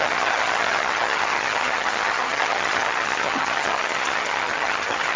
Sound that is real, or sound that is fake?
fake